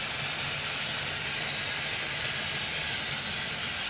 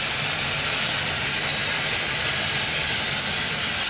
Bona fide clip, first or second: first